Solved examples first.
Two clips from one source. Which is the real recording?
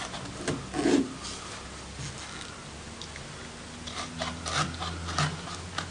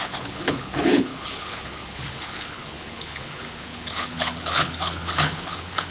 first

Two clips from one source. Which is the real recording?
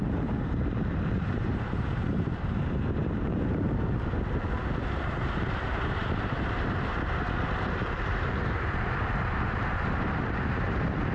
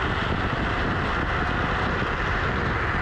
second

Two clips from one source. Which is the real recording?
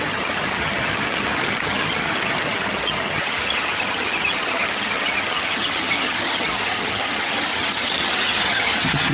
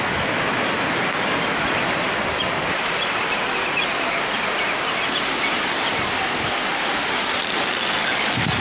second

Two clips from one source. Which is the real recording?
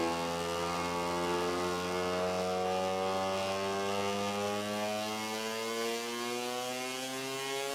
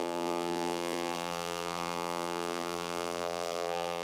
first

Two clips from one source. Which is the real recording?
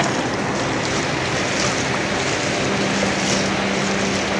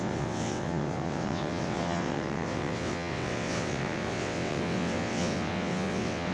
first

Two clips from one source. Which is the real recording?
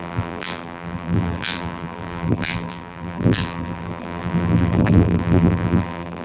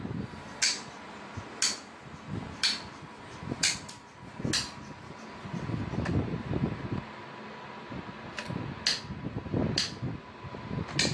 second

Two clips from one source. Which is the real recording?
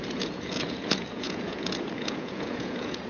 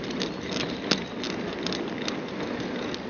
second